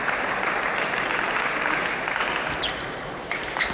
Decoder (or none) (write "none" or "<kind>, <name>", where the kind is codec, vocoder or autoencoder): vocoder, BigVGAN v2